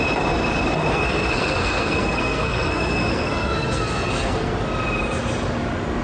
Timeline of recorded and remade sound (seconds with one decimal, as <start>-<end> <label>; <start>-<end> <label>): 0.0-0.9 recorded; 0.9-4.5 remade; 4.5-6.0 recorded